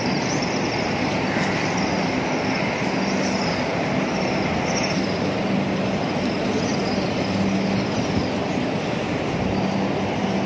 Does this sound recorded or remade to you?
remade